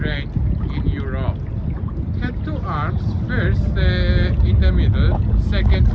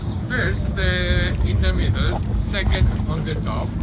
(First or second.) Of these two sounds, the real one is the first